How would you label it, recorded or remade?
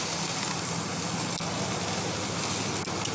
recorded